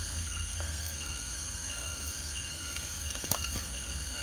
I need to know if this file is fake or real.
fake